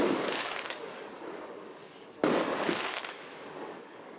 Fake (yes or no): yes